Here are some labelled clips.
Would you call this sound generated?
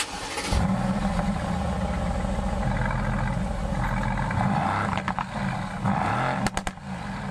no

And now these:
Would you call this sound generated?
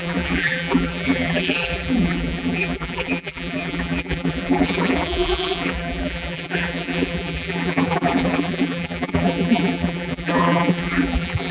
yes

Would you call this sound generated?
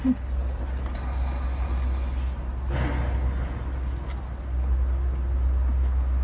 no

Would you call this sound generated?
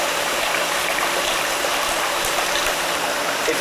yes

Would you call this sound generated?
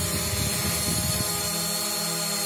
no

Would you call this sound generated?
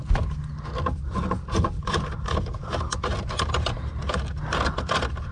no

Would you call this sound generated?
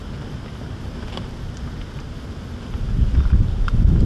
no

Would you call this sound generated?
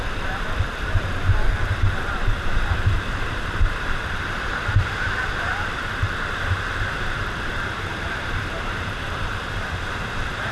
yes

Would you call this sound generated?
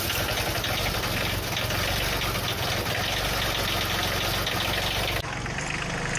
no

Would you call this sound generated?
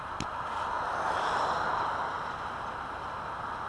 yes